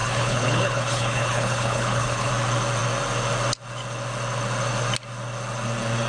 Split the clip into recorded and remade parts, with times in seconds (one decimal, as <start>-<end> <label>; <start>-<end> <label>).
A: 0.0-2.3 remade; 2.3-6.1 recorded